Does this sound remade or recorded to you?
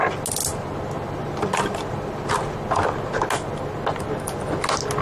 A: recorded